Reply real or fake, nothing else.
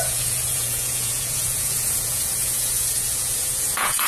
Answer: fake